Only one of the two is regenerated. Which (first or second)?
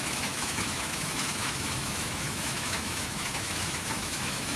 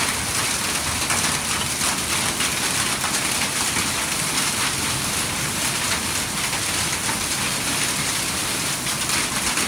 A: first